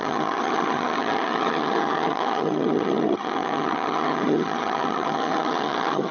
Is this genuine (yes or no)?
no